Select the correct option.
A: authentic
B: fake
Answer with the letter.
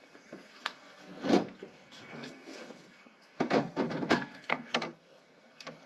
B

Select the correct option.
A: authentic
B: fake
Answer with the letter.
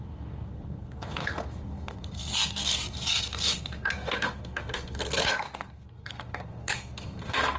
B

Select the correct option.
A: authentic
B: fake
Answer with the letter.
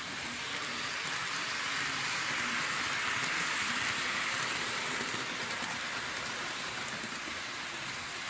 A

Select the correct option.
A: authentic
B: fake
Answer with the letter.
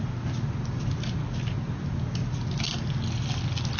A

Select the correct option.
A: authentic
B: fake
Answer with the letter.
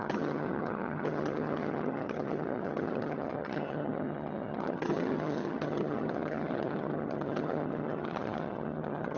B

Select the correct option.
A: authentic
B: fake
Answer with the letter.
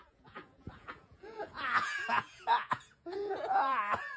B